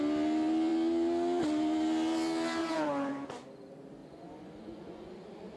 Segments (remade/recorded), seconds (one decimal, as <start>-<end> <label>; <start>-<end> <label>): 0.0-2.6 recorded; 2.6-3.1 remade; 3.1-4.0 recorded; 4.0-5.1 remade; 5.1-5.6 recorded